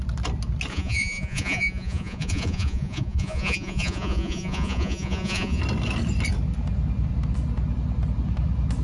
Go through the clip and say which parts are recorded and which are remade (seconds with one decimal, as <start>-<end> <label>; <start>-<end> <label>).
0.0-0.7 recorded; 0.7-5.6 remade; 5.6-8.8 recorded